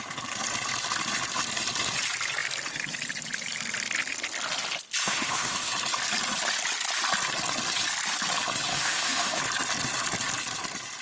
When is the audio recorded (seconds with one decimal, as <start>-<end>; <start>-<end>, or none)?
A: 0.0-5.0; 5.7-8.7; 9.4-11.0